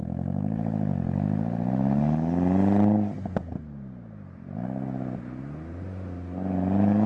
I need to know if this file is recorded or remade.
recorded